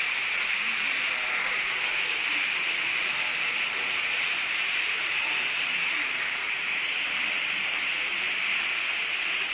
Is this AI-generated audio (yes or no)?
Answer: yes